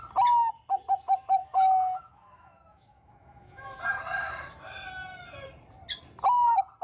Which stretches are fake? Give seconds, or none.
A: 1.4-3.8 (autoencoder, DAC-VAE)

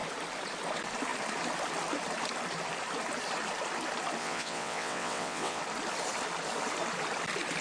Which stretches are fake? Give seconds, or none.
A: 4.2-5.6 (vocoder, WaveNeXt)

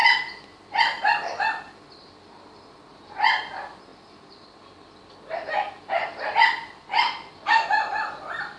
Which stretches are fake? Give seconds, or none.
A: 0.0-2.0 (vocoder, BigVGAN v2); 3.9-8.6

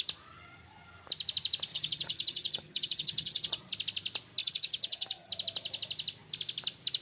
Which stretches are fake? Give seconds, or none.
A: 1.7-3.6 (vocoder, HiFi-GAN); 4.4-5.3